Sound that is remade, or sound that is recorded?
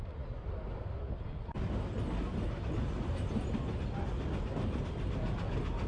recorded